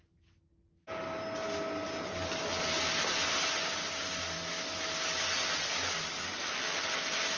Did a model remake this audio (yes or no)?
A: no